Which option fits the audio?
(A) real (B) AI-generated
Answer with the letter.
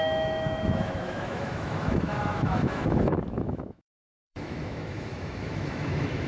B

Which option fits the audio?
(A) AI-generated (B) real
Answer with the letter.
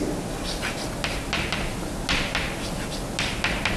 B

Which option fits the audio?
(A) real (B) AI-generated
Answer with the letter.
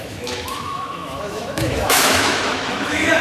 B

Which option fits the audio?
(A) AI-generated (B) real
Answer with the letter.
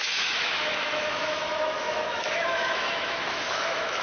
A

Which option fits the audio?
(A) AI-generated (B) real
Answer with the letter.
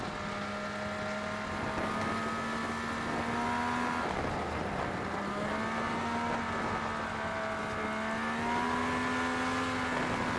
B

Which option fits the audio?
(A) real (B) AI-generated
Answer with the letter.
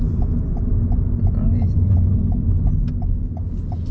A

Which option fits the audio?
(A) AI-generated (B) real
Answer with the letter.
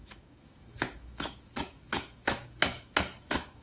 A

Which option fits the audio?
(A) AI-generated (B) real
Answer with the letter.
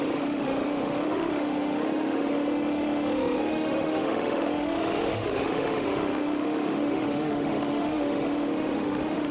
A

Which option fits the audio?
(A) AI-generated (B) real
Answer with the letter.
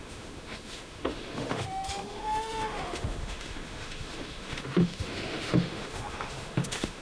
A